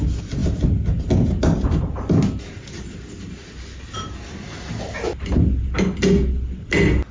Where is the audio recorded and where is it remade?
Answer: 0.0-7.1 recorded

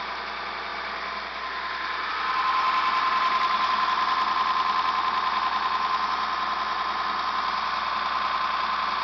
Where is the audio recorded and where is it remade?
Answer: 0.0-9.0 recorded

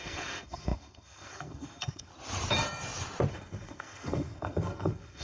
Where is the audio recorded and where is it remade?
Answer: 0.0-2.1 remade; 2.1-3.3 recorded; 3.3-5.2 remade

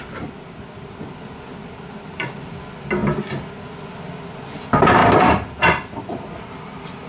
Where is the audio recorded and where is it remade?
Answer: 0.0-7.1 recorded